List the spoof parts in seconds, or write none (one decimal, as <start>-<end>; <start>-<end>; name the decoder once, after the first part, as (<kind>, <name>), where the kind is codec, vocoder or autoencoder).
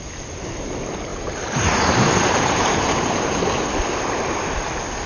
1.1-3.4 (vocoder, BigVGAN v2)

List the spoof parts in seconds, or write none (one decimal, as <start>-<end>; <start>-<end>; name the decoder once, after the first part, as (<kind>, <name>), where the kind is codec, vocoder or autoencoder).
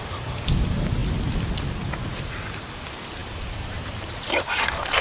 3.2-4.1 (vocoder, BigVGAN v2)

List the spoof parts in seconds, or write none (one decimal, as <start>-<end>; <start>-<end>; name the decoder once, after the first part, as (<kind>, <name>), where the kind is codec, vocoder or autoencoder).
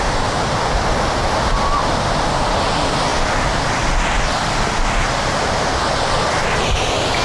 3.1-5.5 (vocoder, BigVGAN v2)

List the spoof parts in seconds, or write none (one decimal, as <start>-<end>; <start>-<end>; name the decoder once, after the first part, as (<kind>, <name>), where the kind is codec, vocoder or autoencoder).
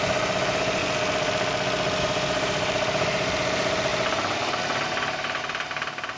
0.0-0.8 (vocoder, BigVGAN v2); 2.0-6.2